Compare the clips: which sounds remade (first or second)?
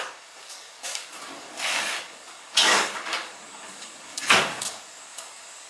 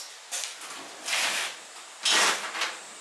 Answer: first